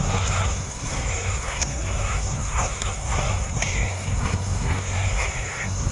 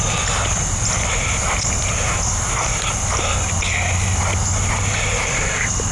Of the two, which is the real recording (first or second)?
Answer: second